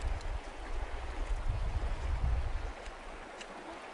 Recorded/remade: remade